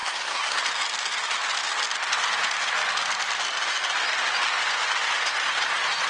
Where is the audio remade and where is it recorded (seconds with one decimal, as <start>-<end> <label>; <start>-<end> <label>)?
0.0-0.6 remade; 0.6-6.1 recorded